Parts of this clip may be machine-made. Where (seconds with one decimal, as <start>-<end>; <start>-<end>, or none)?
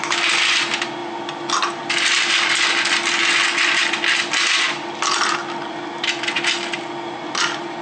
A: none